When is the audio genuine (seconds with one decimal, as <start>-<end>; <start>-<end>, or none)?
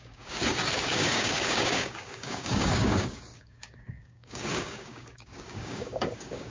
none